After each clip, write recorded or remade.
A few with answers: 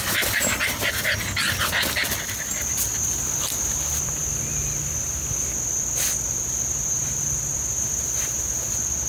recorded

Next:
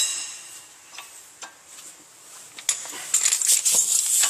recorded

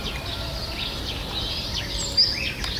recorded